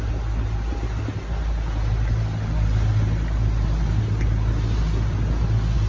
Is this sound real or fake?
real